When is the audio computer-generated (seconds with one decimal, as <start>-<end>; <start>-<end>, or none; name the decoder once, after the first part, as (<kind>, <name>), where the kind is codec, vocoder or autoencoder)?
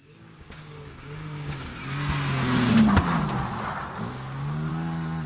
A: 0.0-1.7 (codec, DAC); 4.0-4.7